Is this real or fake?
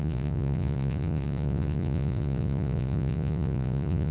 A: fake